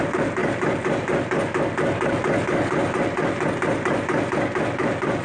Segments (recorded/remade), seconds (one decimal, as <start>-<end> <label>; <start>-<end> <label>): 0.0-5.2 recorded